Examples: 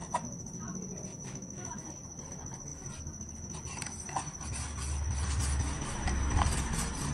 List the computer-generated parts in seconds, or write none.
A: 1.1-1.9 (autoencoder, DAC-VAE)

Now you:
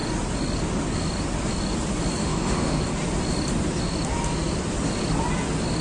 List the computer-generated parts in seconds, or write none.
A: 2.2-2.8 (autoencoder, DAC-VAE)

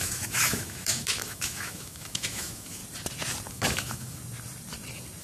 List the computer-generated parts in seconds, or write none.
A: 0.0-2.8 (autoencoder, DAC-VAE); 3.5-4.2